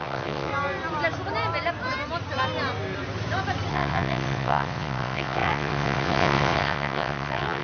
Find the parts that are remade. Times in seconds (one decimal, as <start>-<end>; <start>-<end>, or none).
0.0-0.5; 3.7-7.6